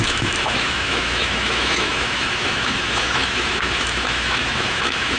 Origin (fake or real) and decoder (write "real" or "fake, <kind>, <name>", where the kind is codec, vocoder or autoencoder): fake, autoencoder, DAC-VAE